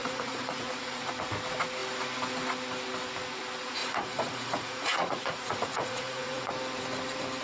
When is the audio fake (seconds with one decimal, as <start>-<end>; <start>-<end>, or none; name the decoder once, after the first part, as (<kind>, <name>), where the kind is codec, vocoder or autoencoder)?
0.0-1.1 (vocoder, Vocos); 3.8-6.5